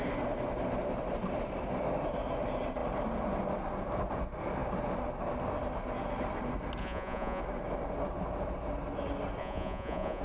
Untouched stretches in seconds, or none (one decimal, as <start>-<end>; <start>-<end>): 0.0-6.8; 7.4-9.4